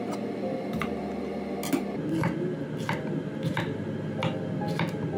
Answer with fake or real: real